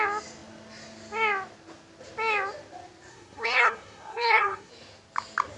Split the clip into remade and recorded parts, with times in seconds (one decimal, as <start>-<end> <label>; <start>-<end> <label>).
0.0-3.1 recorded; 3.1-4.7 remade; 4.7-5.6 recorded